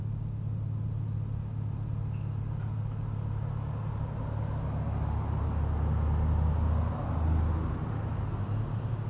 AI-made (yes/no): no